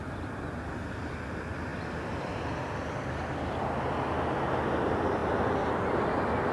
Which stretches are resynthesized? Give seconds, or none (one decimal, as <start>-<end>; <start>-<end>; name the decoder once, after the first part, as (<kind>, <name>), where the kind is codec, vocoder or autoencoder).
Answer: none